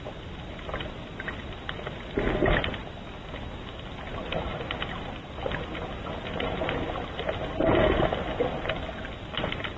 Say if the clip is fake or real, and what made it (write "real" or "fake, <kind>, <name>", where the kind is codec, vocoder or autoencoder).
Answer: real